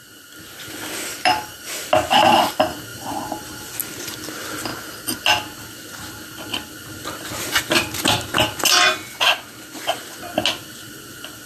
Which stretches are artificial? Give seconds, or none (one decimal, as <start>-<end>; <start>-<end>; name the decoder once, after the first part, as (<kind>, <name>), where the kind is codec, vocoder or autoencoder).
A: 1.1-1.7 (vocoder, BigVGAN v2); 2.9-3.6